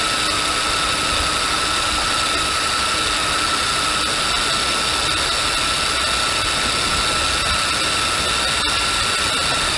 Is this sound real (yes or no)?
yes